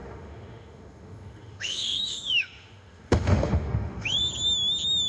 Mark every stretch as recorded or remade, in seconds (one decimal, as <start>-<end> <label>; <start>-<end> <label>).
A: 0.0-4.2 remade; 4.2-5.1 recorded